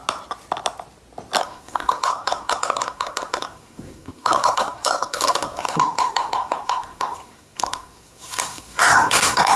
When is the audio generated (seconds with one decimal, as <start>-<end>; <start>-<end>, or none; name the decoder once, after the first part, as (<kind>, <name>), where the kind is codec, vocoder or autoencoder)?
1.4-9.6 (codec, SNAC)